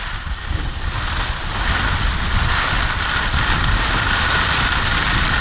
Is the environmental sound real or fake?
real